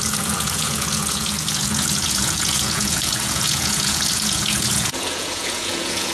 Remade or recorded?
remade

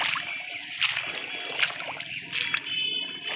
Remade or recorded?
recorded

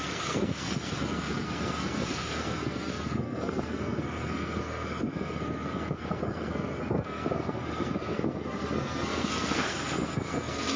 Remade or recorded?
remade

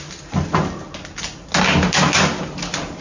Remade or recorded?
recorded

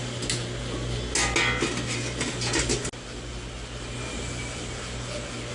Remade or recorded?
recorded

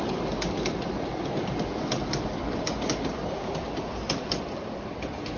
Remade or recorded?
recorded